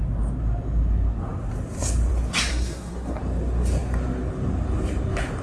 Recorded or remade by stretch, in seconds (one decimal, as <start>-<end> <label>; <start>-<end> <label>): 0.0-2.5 recorded; 2.5-3.2 remade; 3.2-5.4 recorded